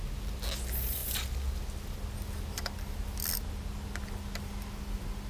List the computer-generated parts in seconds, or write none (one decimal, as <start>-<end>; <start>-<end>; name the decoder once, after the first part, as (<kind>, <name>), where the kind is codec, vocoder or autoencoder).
none